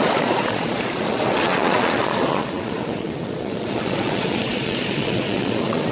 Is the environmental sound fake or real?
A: fake